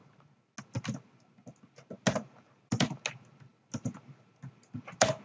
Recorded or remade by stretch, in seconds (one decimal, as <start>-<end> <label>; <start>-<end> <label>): 0.0-5.2 recorded